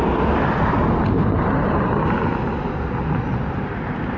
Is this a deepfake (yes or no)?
no